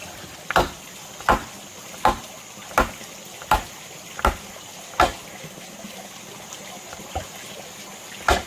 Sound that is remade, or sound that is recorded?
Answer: recorded